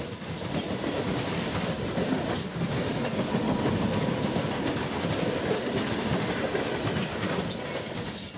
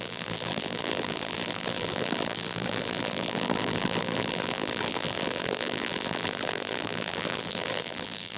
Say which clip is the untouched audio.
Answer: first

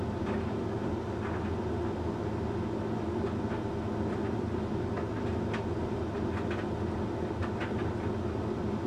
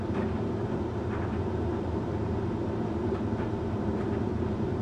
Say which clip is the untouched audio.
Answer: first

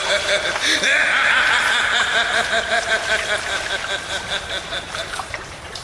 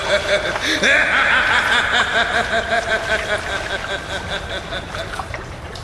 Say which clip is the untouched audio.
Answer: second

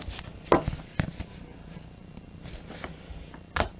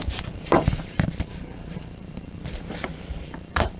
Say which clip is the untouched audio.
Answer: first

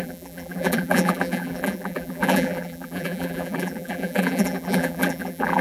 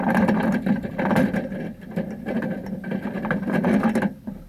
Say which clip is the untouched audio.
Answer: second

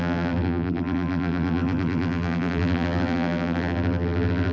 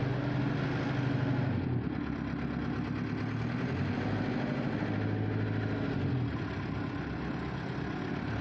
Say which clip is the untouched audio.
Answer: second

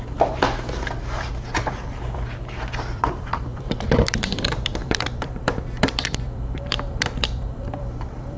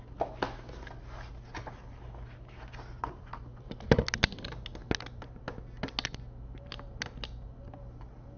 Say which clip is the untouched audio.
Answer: second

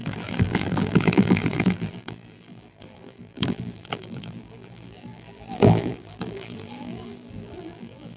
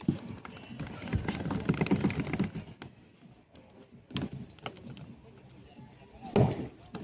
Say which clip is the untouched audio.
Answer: second